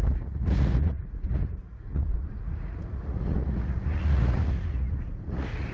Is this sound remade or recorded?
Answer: remade